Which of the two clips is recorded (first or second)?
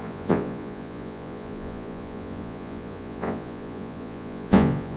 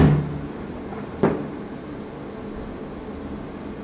second